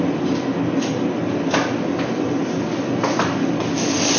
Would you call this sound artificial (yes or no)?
no